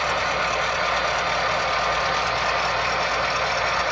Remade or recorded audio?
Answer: recorded